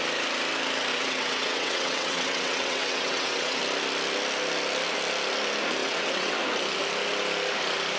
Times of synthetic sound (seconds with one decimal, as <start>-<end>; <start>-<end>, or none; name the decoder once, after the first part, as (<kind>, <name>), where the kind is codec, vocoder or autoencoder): 0.9-3.6 (vocoder, WaveNeXt); 5.8-6.4